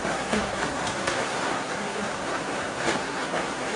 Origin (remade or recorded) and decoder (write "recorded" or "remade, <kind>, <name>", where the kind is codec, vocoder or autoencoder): remade, codec, SNAC